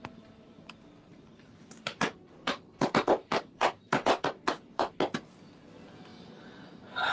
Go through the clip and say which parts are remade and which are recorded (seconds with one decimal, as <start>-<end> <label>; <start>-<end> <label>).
0.0-1.1 recorded; 1.1-4.9 remade; 4.9-7.1 recorded